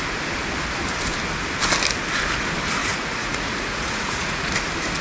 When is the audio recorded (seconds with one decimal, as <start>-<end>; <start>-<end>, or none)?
0.0-2.8; 4.5-5.0